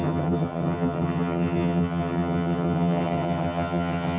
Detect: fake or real fake